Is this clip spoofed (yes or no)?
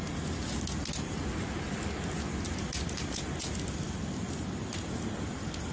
no